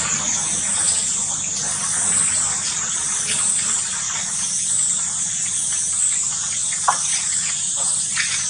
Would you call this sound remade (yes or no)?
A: no